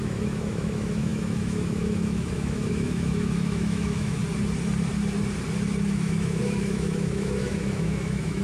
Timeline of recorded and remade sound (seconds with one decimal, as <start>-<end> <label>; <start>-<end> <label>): 0.0-4.2 remade; 4.2-5.9 recorded; 5.9-8.4 remade